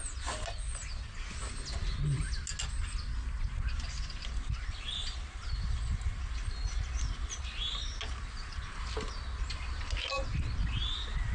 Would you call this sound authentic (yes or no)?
yes